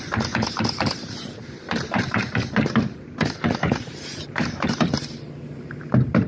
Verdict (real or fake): fake